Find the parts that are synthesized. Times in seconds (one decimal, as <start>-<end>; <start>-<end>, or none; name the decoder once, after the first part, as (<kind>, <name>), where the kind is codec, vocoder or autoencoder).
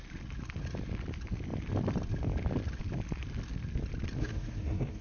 4.2-5.0 (codec, SNAC)